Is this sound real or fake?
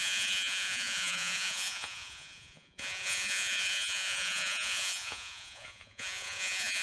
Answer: fake